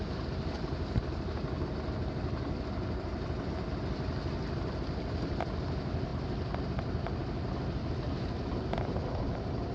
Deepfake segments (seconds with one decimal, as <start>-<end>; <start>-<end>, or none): none